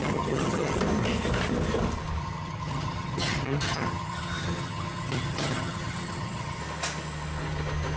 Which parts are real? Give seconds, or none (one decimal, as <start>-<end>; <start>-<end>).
0.8-2.2; 6.6-8.0